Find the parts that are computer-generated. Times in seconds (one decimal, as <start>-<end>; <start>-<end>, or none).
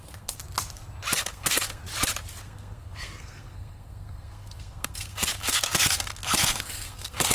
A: 0.0-0.4; 1.2-1.8; 2.4-7.3